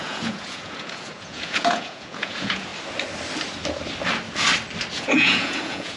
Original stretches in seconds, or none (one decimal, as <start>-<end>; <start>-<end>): 2.7-4.9